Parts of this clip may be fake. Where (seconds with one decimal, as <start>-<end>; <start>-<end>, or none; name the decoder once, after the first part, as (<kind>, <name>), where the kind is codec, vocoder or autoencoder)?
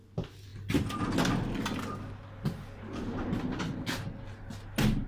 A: none